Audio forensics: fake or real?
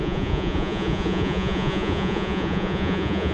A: fake